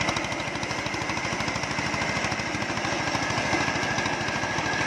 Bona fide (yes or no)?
yes